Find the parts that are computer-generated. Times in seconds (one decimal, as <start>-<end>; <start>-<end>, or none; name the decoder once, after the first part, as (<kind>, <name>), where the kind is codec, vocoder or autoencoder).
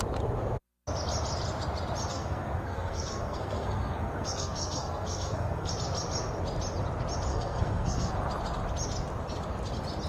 2.1-5.7 (codec, SNAC); 7.3-8.1